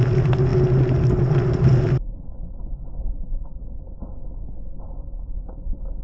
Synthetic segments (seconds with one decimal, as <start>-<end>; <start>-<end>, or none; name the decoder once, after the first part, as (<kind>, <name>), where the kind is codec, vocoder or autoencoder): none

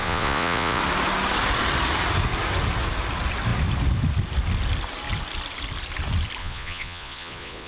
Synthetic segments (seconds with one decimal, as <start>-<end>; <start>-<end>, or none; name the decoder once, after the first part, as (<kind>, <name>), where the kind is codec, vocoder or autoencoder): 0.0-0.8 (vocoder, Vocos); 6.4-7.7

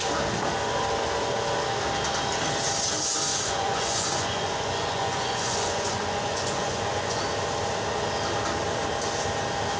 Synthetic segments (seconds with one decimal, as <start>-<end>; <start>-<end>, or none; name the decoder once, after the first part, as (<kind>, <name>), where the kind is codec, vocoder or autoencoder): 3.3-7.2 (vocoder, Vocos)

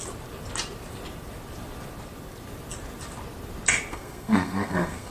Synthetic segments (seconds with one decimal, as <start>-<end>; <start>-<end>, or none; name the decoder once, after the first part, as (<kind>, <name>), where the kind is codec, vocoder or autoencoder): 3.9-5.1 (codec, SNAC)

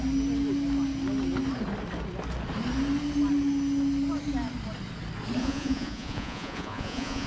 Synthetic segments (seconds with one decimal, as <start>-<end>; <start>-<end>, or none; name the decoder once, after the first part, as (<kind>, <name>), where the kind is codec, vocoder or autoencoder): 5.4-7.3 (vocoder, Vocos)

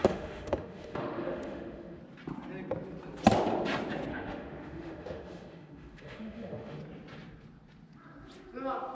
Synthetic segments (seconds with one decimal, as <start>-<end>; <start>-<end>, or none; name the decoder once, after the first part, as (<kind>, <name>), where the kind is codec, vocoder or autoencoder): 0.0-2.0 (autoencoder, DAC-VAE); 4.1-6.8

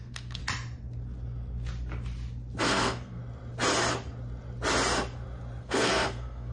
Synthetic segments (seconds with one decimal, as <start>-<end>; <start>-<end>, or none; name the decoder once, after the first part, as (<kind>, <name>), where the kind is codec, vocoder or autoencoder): 0.0-0.4 (codec, SNAC); 2.6-3.2; 5.6-6.5